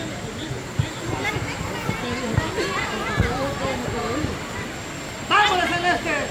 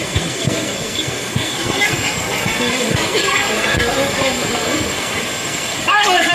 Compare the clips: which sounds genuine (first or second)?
first